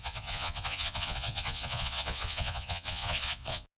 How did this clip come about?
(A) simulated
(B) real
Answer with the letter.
A